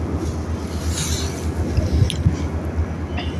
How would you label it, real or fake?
real